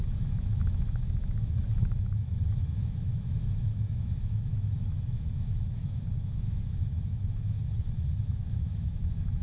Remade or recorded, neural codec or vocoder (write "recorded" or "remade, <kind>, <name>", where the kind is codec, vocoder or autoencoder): remade, autoencoder, DAC-VAE